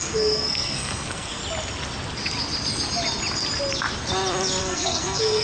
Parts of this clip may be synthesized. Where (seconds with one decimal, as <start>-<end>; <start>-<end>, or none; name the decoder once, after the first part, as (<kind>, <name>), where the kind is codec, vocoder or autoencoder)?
0.0-1.4 (codec, SNAC); 4.6-5.4